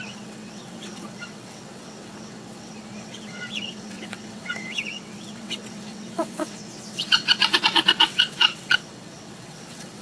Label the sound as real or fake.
fake